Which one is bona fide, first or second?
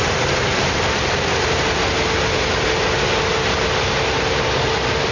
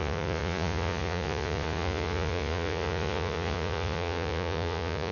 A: first